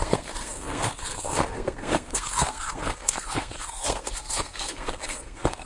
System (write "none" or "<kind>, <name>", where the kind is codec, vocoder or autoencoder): codec, SNAC